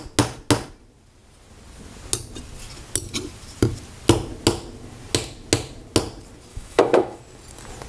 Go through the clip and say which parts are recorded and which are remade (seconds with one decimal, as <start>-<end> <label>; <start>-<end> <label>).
0.0-6.5 recorded; 6.5-7.2 remade; 7.2-7.9 recorded